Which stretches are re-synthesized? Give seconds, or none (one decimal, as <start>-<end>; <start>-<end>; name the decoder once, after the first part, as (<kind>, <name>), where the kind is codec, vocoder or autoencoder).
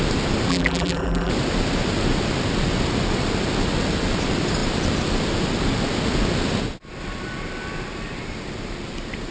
0.5-1.3 (vocoder, BigVGAN v2)